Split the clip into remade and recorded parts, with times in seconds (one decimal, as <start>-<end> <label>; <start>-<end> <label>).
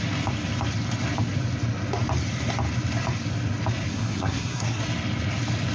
0.0-3.9 recorded; 3.9-4.8 remade; 4.8-5.7 recorded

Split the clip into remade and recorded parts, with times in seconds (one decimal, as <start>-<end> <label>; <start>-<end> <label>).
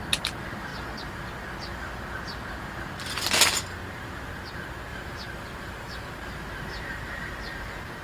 0.0-4.9 recorded; 4.9-8.0 remade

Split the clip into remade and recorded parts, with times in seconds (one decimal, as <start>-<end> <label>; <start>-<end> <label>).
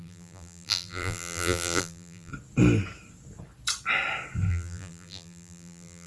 0.0-2.3 remade; 2.3-4.5 recorded; 4.5-6.1 remade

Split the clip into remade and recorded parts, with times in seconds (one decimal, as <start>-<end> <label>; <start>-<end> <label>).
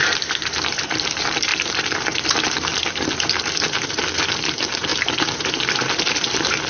0.0-6.7 recorded